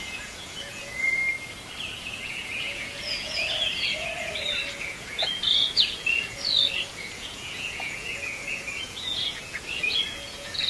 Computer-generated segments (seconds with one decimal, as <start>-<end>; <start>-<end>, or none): 0.0-1.2; 2.0-4.1; 4.8-10.7